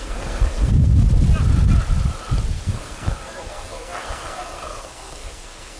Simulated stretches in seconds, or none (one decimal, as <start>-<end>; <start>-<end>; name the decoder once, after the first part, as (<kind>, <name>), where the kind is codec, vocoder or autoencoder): 0.0-0.9 (codec, SNAC); 2.5-5.8

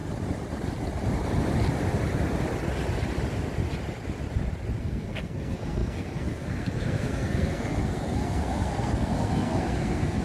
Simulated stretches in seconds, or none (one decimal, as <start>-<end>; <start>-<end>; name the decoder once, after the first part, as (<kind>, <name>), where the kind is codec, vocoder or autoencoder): 4.8-10.2 (codec, SNAC)

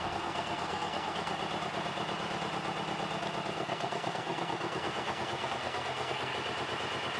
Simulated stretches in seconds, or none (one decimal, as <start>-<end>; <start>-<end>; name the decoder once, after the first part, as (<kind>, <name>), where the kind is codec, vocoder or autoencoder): 0.0-1.3 (codec, SNAC); 3.5-6.3